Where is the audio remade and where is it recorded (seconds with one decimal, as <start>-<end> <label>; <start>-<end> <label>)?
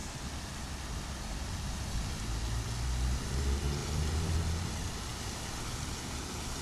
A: 0.0-3.8 recorded; 3.8-4.4 remade; 4.4-6.6 recorded